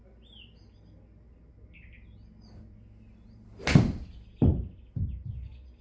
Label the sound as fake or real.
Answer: real